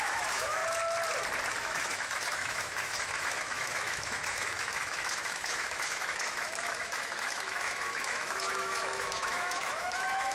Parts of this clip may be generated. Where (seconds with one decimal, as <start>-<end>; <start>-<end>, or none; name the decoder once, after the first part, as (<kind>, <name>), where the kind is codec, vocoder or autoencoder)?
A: 0.0-0.6 (autoencoder, DAC-VAE); 1.6-10.3